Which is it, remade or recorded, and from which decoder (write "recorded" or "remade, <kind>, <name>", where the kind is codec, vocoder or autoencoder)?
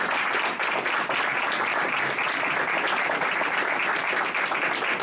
recorded